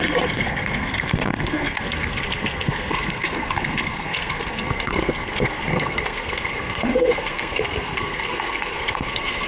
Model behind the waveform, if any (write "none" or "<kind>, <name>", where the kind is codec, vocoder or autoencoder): codec, SNAC